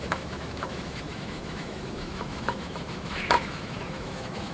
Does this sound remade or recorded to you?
remade